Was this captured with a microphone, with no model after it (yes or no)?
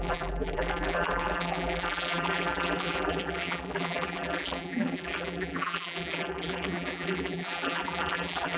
no